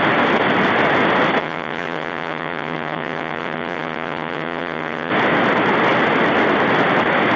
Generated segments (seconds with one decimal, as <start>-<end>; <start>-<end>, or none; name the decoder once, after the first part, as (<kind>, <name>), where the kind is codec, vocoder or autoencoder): 1.4-5.1 (vocoder, HiFi-GAN)